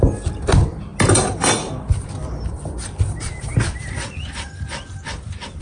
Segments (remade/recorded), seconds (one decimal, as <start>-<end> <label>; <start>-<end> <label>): 0.0-5.6 remade